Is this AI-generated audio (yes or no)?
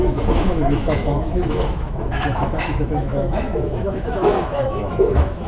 yes